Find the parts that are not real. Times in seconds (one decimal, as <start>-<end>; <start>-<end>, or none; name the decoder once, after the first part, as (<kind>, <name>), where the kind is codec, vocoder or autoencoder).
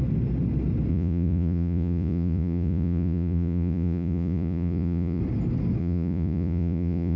0.9-5.2 (vocoder, Vocos); 5.8-7.2